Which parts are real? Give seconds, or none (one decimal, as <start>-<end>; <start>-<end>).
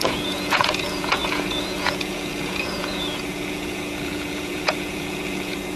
none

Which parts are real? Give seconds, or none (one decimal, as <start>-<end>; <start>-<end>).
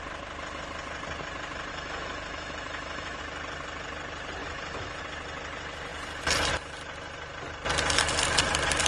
0.0-1.7; 3.2-4.4; 5.0-8.9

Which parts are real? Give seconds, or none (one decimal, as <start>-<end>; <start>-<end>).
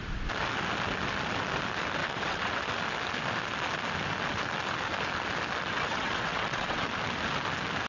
0.0-2.0; 2.6-5.7; 6.9-7.9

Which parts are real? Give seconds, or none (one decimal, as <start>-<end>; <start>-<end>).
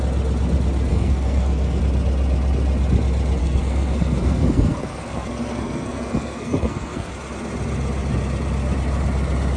0.0-0.9; 1.8-3.4; 7.1-9.6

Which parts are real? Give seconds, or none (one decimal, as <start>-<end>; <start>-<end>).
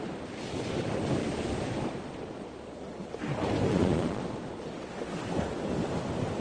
0.0-3.7; 4.2-6.4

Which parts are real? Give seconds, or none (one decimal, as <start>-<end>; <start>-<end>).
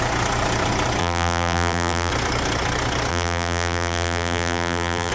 0.0-1.0; 2.1-3.1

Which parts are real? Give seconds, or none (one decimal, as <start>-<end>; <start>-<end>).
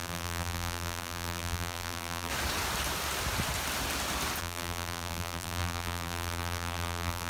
2.3-4.4